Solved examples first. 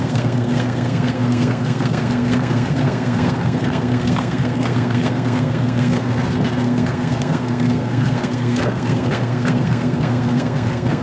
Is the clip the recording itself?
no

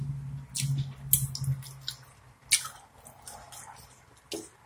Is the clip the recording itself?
yes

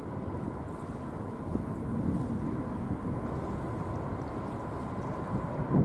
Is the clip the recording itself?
yes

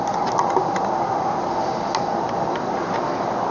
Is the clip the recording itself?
yes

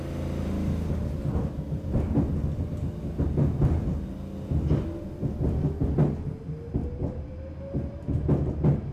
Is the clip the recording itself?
yes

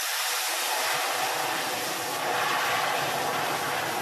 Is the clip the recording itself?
yes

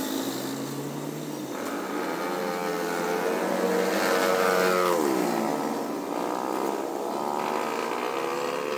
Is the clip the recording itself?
yes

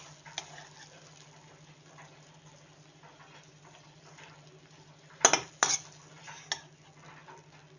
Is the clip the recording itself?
yes